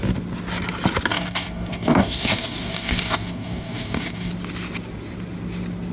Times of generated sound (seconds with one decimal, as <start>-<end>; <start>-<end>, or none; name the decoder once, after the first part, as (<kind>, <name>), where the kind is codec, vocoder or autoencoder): 1.1-4.3 (codec, DAC)